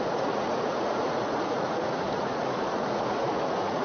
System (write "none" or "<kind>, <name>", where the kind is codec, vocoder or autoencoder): vocoder, Vocos